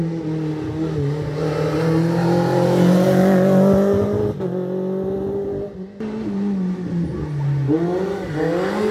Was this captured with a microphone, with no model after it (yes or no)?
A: yes